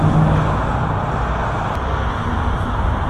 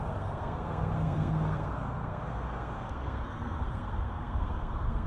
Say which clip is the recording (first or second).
first